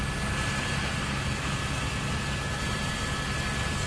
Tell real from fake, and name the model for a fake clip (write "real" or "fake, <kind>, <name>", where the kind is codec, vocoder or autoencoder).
real